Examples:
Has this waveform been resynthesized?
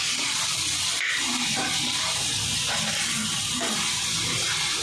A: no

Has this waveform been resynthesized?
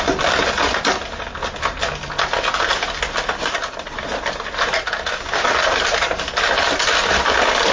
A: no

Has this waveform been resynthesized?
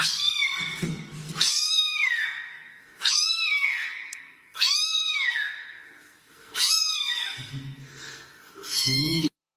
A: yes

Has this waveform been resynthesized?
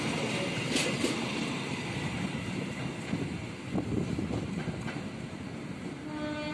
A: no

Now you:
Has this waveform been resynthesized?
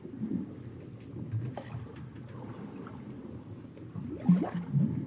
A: no